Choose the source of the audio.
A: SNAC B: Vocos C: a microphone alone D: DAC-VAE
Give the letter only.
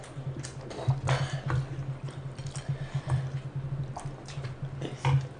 C